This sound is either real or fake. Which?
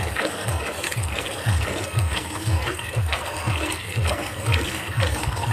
fake